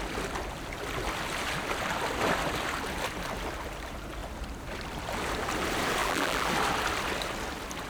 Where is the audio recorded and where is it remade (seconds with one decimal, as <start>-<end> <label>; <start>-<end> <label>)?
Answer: 0.0-6.0 recorded; 6.0-6.5 remade; 6.5-7.9 recorded